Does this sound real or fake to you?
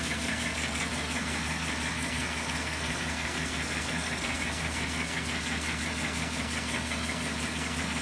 fake